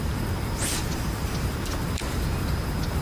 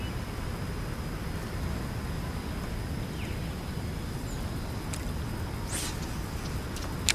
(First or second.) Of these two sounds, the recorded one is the second